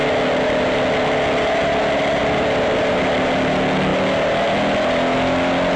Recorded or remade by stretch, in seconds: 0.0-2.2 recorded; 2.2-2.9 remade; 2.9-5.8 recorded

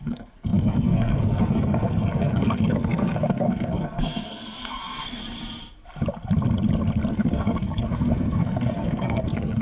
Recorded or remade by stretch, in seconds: 0.0-5.2 remade; 5.2-7.1 recorded; 7.1-9.6 remade

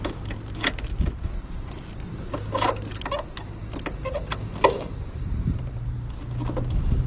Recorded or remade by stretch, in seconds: 0.0-3.6 recorded; 3.6-5.7 remade; 5.7-7.1 recorded

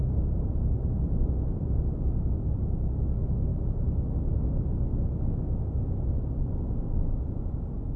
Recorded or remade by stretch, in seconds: 0.0-8.0 recorded

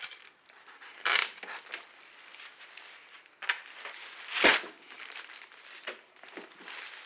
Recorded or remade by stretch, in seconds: 0.0-7.1 recorded